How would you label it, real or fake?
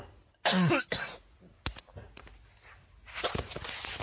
real